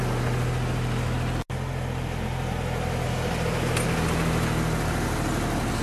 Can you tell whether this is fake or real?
real